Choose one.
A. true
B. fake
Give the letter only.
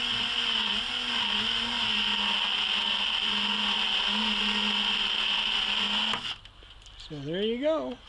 A